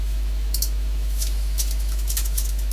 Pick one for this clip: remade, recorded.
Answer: remade